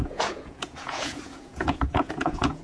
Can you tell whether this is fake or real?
fake